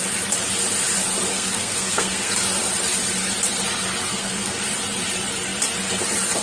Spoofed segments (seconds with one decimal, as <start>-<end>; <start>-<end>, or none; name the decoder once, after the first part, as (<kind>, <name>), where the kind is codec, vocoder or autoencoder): 1.3-2.3 (codec, SNAC); 4.1-4.6